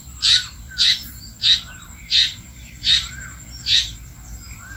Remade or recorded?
remade